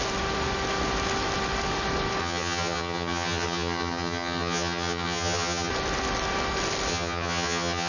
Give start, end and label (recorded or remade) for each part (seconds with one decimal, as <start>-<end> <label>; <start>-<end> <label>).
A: 0.0-2.2 recorded; 2.2-5.7 remade; 5.7-6.9 recorded; 6.9-7.9 remade